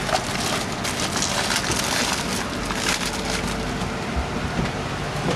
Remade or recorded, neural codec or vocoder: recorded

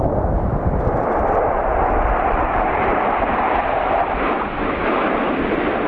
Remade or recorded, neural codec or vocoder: remade, vocoder, BigVGAN v2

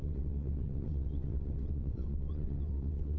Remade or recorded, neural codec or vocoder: remade, vocoder, WaveNeXt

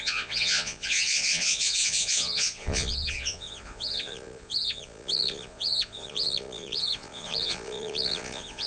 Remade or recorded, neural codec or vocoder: remade, vocoder, Vocos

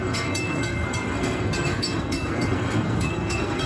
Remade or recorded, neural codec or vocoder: remade, codec, SNAC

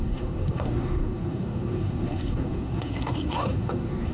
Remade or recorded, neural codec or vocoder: remade, codec, SNAC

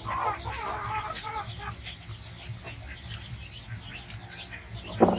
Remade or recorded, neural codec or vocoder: recorded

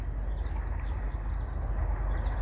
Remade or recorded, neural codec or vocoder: recorded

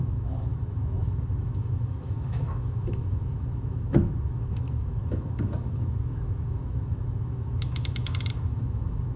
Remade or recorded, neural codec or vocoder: remade, autoencoder, DAC-VAE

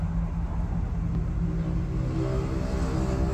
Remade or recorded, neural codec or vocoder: recorded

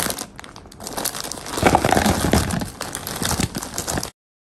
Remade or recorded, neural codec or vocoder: recorded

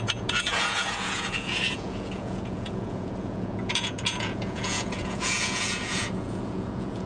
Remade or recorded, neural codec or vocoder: remade, vocoder, Vocos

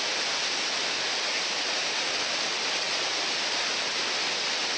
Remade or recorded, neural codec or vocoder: recorded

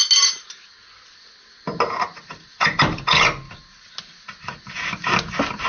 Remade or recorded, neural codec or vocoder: recorded